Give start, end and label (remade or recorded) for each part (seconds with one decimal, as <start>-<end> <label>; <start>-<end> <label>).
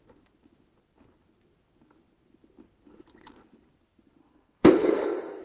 0.0-4.2 recorded; 4.2-5.4 remade